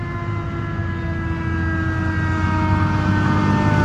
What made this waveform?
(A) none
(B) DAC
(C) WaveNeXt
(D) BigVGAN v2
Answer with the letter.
A